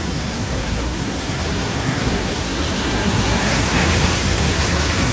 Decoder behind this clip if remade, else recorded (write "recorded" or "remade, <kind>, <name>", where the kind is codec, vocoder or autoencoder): remade, codec, SNAC